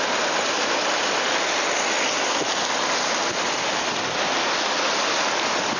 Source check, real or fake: real